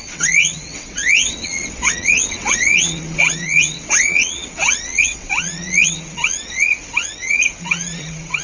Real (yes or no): no